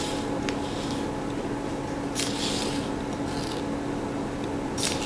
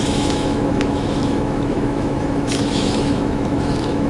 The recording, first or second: first